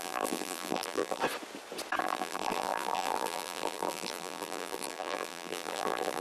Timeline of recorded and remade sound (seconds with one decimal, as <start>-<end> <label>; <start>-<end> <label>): 0.0-1.2 remade; 1.2-2.0 recorded; 2.0-6.2 remade